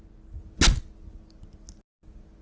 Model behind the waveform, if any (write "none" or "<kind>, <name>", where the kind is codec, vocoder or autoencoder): none